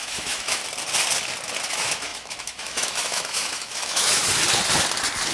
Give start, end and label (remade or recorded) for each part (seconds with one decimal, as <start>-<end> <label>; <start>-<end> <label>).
0.0-0.6 remade; 0.6-1.7 recorded; 1.7-4.2 remade; 4.2-5.3 recorded

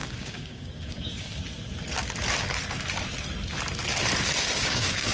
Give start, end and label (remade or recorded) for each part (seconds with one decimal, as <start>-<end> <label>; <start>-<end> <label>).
0.0-1.4 remade; 1.4-4.5 recorded; 4.5-5.1 remade

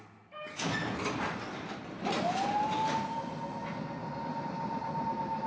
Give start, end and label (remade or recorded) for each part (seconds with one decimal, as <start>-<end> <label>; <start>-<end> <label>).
0.0-1.5 recorded; 1.5-3.4 remade; 3.4-4.0 recorded; 4.0-5.5 remade

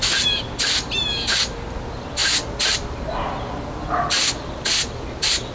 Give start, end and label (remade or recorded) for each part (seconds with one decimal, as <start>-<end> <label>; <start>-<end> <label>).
0.0-5.5 recorded

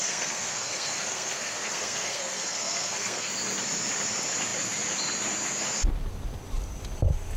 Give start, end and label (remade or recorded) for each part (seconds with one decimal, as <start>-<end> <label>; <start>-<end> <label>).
0.0-3.3 remade; 3.3-7.4 recorded

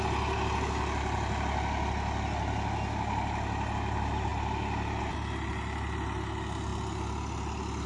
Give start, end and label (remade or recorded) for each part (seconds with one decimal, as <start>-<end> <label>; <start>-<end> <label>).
0.0-7.9 recorded

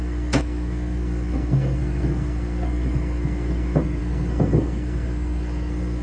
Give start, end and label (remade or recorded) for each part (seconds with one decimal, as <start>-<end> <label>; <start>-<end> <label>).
0.0-6.0 remade

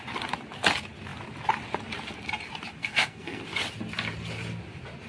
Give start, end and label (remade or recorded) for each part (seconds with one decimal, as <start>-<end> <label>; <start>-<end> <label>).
0.0-2.8 recorded; 2.8-3.4 remade; 3.4-5.1 recorded